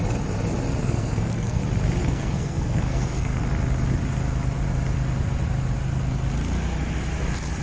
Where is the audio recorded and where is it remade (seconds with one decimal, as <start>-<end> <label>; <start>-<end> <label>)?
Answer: 0.0-0.8 recorded; 0.8-1.6 remade; 1.6-2.0 recorded; 2.0-3.4 remade; 3.4-7.6 recorded